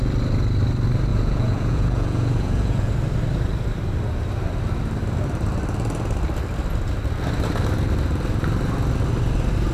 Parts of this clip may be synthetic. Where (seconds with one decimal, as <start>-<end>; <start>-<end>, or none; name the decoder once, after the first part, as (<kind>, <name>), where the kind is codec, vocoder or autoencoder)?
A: 1.1-2.9 (vocoder, Vocos)